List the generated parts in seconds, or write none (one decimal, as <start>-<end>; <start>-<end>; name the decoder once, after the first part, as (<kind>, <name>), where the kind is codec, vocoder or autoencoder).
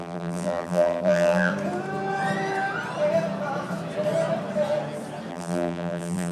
0.0-1.5 (vocoder, BigVGAN v2); 5.3-6.3